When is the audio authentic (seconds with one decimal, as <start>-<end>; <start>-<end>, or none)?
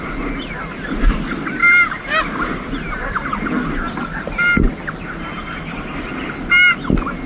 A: 0.0-7.3